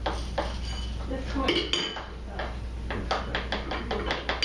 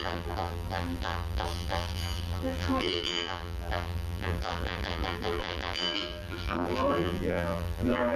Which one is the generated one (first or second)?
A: second